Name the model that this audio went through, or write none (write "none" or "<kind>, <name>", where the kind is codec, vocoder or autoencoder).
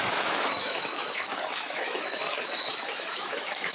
autoencoder, DAC-VAE